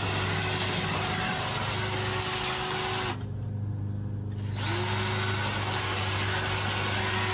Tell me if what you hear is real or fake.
real